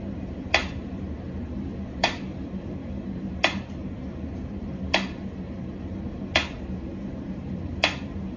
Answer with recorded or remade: remade